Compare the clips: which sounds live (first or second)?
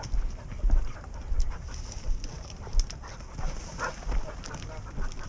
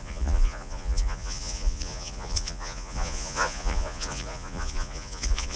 first